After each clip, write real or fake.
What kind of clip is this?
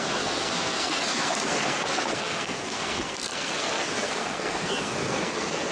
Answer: fake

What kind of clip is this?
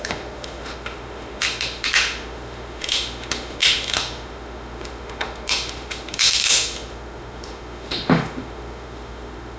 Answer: fake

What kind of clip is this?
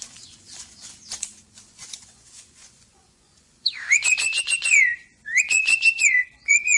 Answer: fake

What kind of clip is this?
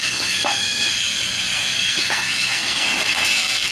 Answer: fake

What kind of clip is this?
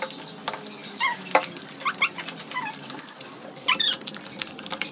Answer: real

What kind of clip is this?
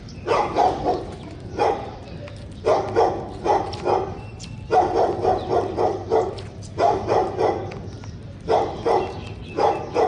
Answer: fake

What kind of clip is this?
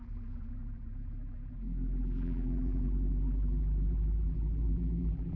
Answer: fake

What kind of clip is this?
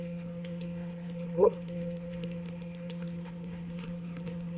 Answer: fake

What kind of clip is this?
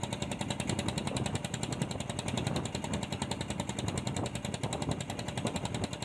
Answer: real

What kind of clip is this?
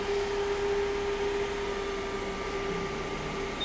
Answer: real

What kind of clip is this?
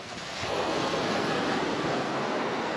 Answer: fake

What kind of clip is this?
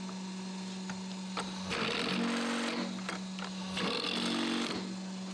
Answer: real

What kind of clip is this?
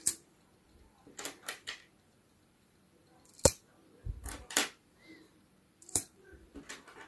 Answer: fake